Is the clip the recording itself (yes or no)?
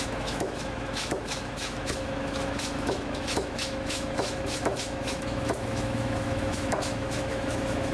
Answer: no